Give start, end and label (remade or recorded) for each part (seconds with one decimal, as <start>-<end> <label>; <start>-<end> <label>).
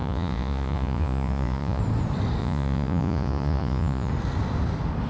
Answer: 0.0-1.8 remade; 1.8-2.4 recorded; 2.4-4.1 remade; 4.1-5.1 recorded